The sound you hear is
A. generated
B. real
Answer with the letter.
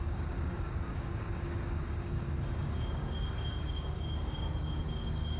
A